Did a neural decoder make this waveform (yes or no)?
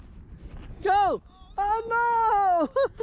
no